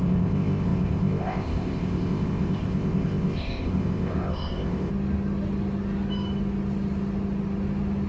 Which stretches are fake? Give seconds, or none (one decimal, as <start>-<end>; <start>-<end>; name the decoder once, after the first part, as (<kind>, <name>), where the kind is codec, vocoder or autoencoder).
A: 0.0-4.9 (codec, ZipCodec)